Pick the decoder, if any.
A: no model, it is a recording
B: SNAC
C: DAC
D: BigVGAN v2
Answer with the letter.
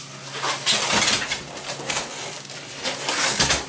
A